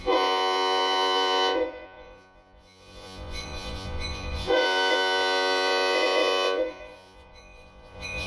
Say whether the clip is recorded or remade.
remade